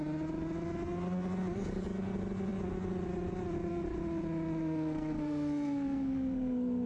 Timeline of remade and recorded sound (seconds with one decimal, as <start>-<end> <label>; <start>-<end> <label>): 0.0-4.6 recorded; 4.6-6.9 remade